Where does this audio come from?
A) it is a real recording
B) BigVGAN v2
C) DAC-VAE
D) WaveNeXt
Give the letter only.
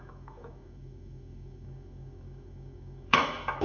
C